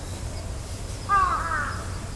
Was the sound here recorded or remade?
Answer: recorded